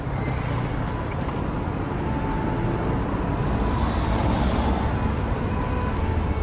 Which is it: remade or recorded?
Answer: recorded